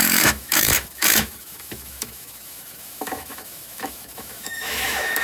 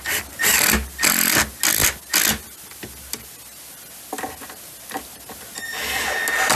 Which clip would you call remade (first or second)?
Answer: first